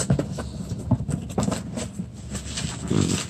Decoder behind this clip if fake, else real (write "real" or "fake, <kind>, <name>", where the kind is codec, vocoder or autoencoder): real